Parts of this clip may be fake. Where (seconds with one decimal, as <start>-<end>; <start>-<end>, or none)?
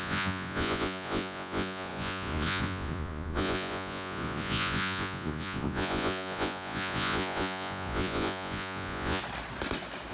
0.0-9.2